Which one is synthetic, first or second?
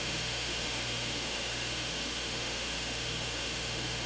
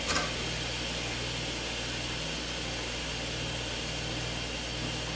first